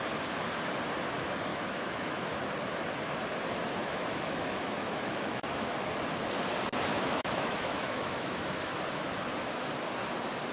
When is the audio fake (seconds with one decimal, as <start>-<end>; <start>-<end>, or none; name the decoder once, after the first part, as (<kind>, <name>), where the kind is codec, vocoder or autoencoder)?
1.5-2.4 (autoencoder, DAC-VAE); 3.8-5.7; 6.9-8.8